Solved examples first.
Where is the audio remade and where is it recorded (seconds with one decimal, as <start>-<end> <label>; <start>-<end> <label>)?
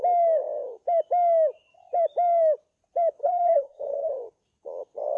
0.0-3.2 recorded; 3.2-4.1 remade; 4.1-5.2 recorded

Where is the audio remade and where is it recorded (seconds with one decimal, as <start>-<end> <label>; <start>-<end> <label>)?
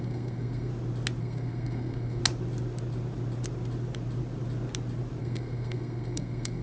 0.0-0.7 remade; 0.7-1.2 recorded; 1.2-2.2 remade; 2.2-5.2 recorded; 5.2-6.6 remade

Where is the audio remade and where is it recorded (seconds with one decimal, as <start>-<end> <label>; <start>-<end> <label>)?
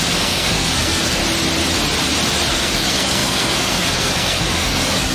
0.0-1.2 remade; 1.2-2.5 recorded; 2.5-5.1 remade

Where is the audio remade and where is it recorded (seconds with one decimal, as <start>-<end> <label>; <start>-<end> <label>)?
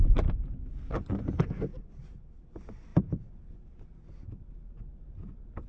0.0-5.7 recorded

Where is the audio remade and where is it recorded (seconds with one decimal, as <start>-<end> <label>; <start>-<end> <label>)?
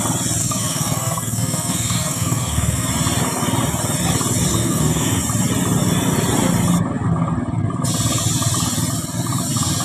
0.0-0.4 recorded; 0.4-2.9 remade; 2.9-4.5 recorded; 4.5-5.2 remade; 5.2-9.8 recorded